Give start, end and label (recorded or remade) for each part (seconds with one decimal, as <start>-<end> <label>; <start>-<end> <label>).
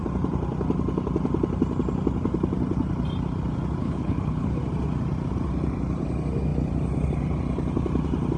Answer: 0.0-3.8 recorded; 3.8-4.6 remade; 4.6-8.4 recorded